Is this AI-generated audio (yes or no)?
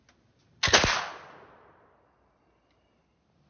no